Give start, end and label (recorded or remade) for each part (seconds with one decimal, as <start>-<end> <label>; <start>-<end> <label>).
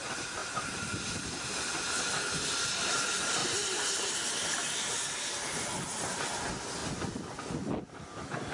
0.0-8.5 recorded